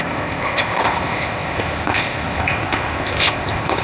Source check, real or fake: fake